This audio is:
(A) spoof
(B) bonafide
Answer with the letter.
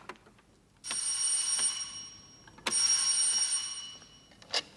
B